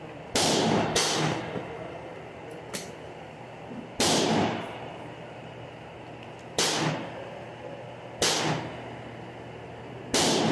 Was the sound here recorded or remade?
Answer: recorded